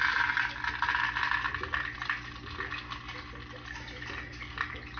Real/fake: real